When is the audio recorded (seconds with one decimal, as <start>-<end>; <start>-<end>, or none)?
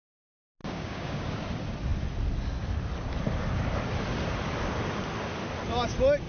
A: 0.0-0.6; 1.3-6.3